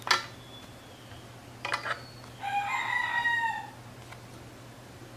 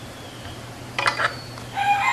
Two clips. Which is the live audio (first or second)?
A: first